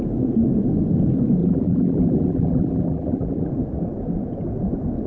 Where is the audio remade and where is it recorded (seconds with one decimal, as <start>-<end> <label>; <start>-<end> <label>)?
0.0-1.4 recorded; 1.4-3.5 remade; 3.5-5.1 recorded